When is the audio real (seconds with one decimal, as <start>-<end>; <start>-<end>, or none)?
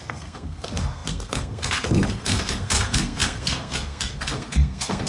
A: none